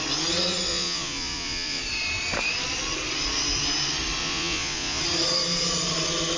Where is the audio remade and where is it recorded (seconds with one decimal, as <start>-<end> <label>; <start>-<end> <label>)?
0.0-0.7 recorded; 0.7-1.8 remade; 1.8-4.2 recorded; 4.2-5.0 remade; 5.0-6.4 recorded